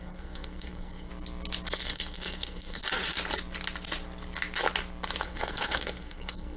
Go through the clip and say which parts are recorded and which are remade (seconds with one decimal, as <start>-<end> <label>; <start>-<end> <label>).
0.0-1.1 remade; 1.1-1.8 recorded; 1.8-2.8 remade; 2.8-5.2 recorded; 5.2-6.6 remade